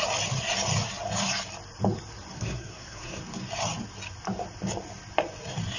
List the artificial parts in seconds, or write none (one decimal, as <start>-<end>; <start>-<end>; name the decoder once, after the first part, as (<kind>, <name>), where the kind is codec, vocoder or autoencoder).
2.3-3.2 (codec, SNAC)